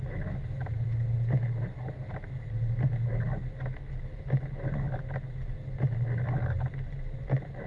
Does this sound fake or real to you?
real